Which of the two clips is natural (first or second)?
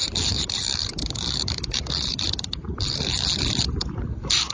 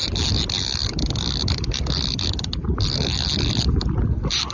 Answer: second